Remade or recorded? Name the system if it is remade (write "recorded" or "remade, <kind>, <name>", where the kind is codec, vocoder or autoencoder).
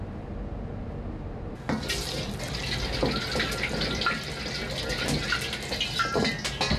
recorded